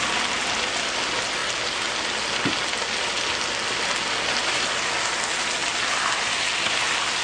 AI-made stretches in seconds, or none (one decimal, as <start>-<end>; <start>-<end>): none